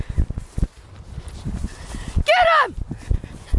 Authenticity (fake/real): real